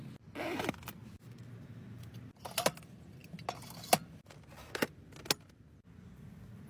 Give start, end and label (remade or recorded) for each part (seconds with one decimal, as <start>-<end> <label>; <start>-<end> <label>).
0.0-6.7 recorded